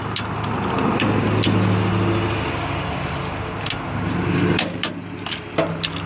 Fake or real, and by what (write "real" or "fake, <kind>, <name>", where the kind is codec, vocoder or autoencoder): fake, vocoder, BigVGAN v2